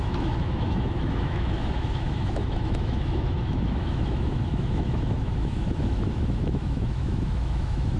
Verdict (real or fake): fake